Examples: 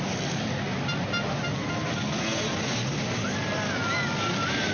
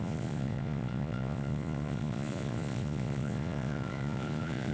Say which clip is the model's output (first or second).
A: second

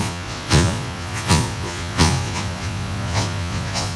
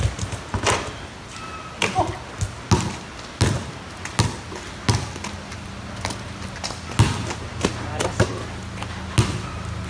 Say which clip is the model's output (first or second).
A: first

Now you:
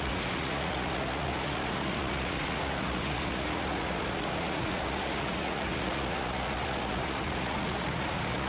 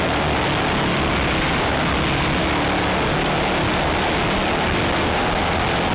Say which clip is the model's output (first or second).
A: first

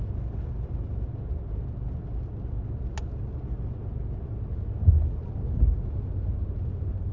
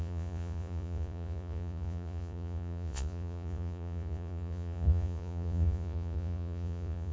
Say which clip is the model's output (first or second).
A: second